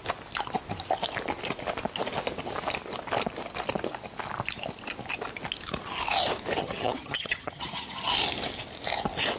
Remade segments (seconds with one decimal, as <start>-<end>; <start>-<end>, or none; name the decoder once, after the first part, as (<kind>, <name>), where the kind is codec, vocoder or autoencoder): 6.6-8.1 (vocoder, HiFi-GAN)